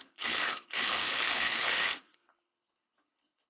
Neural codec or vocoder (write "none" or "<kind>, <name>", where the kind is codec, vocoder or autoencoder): codec, HILCodec